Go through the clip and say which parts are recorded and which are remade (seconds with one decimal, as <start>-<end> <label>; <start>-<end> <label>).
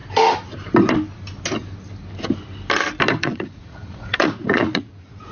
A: 0.0-3.2 recorded; 3.2-5.3 remade